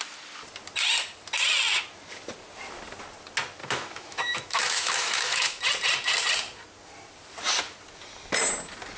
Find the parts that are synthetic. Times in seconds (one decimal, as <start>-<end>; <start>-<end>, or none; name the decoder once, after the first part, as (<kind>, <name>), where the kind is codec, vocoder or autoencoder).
3.6-5.6 (autoencoder, DAC-VAE)